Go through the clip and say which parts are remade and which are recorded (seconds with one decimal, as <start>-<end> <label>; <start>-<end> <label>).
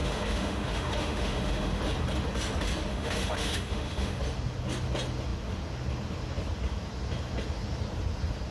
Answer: 0.0-1.8 remade; 1.8-2.9 recorded; 2.9-4.2 remade; 4.2-8.5 recorded